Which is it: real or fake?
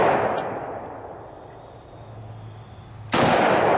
real